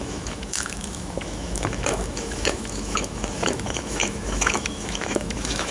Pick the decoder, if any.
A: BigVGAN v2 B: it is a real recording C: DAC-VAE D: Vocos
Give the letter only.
C